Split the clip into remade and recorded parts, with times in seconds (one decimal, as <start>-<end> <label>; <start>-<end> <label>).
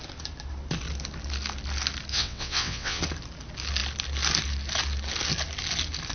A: 0.0-2.1 recorded; 2.1-3.0 remade; 3.0-6.1 recorded